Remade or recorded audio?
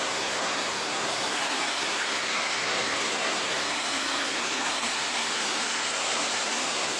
remade